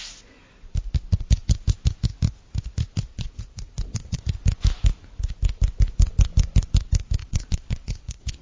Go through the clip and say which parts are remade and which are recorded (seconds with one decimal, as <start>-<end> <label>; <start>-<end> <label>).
0.0-3.1 recorded; 3.1-4.2 remade; 4.2-7.2 recorded; 7.2-8.4 remade